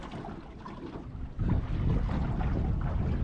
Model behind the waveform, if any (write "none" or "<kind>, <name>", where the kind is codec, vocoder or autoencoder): none